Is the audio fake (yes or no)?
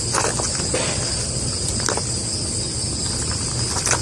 no